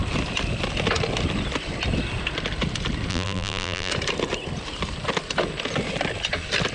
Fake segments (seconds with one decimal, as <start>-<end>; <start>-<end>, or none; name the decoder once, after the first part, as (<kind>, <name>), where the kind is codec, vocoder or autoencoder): 3.1-3.9 (vocoder, BigVGAN v2)